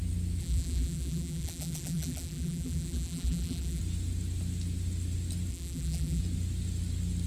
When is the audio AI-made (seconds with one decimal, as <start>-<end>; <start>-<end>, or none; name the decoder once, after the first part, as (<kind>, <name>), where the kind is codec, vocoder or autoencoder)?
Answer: 0.4-3.8 (vocoder, BigVGAN v2); 5.5-6.2